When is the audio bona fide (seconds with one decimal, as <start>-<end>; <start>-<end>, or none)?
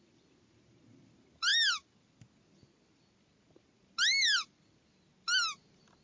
0.0-6.0